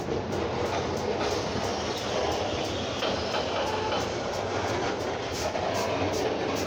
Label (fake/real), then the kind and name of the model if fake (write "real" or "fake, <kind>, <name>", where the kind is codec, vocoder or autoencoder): real